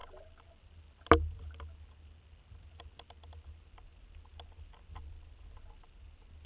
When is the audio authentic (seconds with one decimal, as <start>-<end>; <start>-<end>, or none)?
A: 0.0-6.5